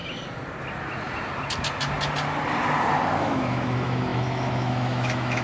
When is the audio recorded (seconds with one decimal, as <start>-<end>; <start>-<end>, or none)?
0.0-3.2